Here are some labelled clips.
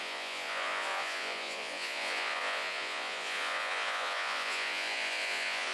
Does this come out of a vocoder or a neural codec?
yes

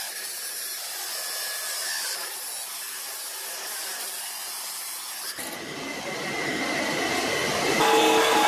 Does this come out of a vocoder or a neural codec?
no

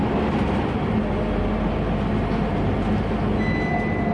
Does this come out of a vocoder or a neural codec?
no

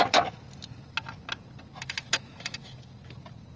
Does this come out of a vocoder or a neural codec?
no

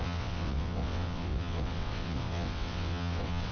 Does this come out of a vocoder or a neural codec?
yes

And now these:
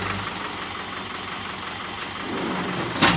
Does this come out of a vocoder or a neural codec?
no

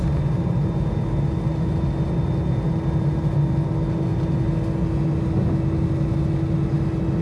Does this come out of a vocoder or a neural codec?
no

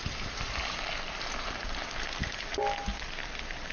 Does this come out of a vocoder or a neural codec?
no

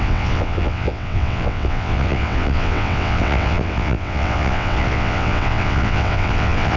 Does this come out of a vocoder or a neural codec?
yes